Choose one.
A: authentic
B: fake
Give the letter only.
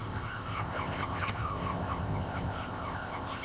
B